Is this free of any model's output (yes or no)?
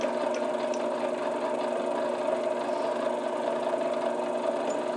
yes